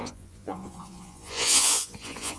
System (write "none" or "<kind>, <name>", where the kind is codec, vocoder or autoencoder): vocoder, Vocos